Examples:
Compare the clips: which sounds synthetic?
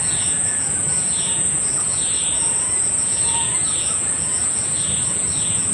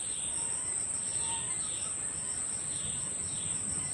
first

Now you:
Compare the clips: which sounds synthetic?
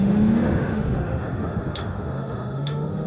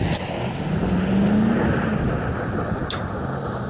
first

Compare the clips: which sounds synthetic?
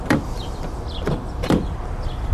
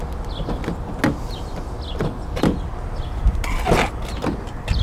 first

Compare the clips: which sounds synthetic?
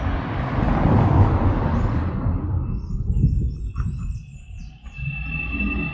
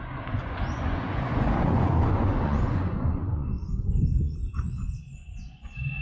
second